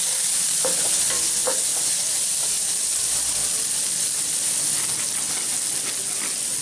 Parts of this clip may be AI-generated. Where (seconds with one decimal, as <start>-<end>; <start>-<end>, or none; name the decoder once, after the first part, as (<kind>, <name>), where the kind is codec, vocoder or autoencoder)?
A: 1.7-4.6 (vocoder, BigVGAN v2)